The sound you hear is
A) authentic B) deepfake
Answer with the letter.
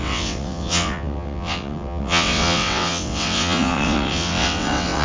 B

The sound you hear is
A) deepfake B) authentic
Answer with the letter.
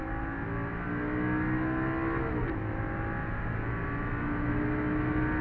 B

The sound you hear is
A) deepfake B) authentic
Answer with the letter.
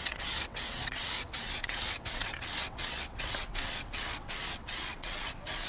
A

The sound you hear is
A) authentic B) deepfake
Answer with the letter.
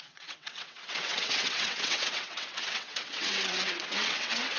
B